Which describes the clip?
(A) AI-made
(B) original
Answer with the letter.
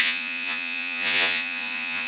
A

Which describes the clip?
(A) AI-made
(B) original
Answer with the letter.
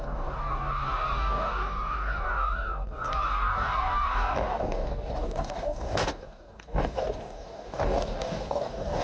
A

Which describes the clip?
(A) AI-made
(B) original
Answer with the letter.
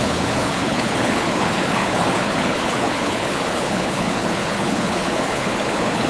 A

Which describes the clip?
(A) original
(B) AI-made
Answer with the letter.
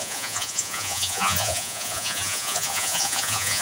B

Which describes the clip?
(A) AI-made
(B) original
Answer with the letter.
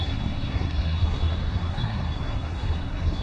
A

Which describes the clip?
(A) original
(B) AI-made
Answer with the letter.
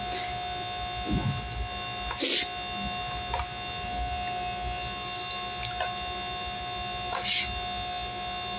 A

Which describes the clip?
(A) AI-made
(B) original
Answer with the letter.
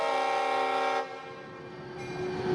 B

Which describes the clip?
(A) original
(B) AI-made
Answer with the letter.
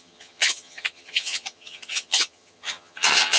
B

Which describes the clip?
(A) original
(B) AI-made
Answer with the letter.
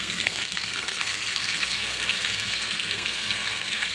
B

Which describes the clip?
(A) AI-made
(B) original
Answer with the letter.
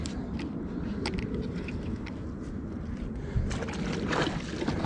B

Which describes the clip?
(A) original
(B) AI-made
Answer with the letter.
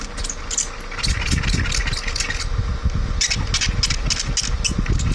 A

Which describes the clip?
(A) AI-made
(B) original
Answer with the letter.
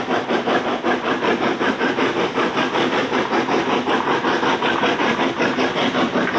B